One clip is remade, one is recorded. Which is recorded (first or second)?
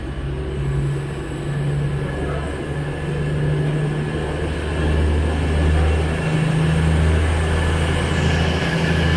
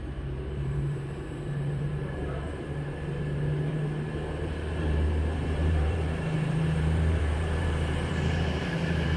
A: first